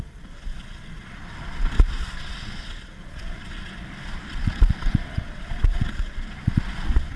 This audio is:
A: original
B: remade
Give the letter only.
B